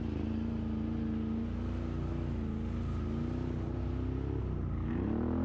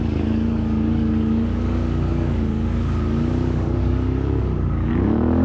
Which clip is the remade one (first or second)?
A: second